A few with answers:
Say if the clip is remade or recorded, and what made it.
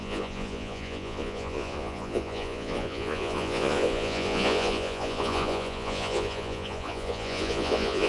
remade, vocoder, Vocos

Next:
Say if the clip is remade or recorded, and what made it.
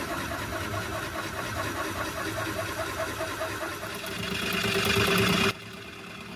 recorded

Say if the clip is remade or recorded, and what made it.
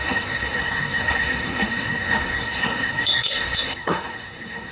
remade, codec, SNAC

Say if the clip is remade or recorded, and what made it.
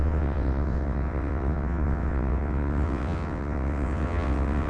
remade, vocoder, WaveNeXt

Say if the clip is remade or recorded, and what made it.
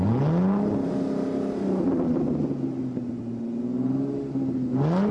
recorded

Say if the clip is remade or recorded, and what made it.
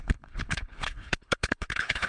remade, codec, HILCodec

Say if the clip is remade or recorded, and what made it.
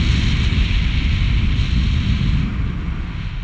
recorded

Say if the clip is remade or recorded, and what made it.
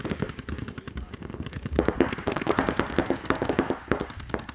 remade, codec, DAC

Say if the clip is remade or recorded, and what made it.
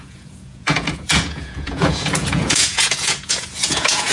remade, vocoder, Vocos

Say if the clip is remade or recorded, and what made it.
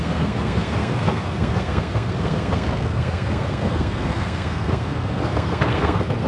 remade, codec, SNAC